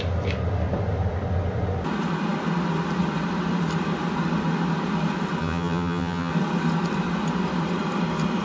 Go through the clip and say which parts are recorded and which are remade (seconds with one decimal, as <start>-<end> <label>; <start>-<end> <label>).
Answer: 0.0-5.4 recorded; 5.4-6.3 remade; 6.3-8.4 recorded